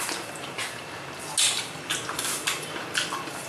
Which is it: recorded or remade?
recorded